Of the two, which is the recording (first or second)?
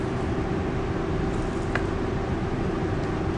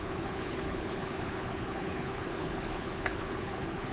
first